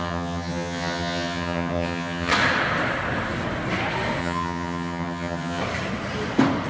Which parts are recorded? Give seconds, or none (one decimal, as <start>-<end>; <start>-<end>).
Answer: 2.3-4.2; 5.6-6.7